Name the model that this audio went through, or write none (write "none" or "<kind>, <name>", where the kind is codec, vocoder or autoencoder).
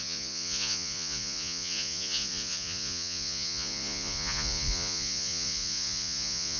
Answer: vocoder, Vocos